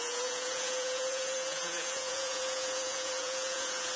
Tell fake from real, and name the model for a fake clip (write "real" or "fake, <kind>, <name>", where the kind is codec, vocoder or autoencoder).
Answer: fake, vocoder, Vocos